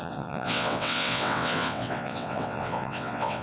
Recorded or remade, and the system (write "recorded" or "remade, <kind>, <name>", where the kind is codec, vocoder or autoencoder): remade, vocoder, WaveNeXt